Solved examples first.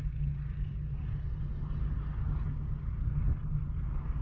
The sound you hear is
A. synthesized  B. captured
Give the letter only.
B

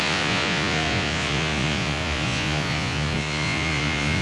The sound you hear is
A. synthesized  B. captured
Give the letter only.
A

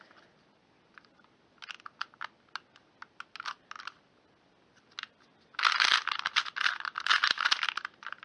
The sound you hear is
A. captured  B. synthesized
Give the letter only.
A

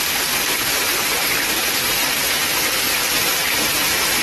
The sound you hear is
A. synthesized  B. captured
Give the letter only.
B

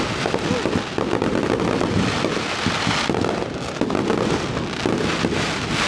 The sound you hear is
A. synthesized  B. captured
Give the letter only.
B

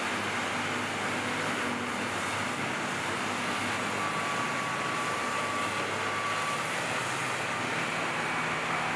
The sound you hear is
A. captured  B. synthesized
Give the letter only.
A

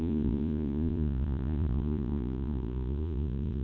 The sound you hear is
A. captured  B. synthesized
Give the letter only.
B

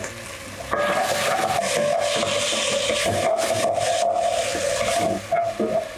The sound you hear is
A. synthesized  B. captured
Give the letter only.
B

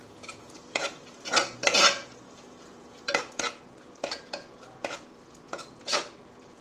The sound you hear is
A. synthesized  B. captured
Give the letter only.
A